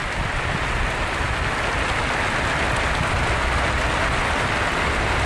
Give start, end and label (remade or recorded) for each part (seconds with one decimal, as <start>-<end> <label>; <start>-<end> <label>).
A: 0.0-3.2 recorded; 3.2-5.3 remade